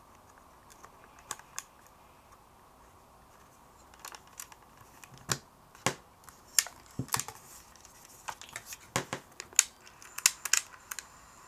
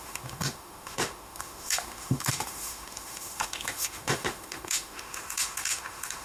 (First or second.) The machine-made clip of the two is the second